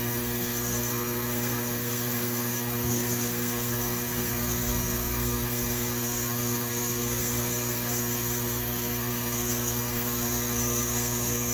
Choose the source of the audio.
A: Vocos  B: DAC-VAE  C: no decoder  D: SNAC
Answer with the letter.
D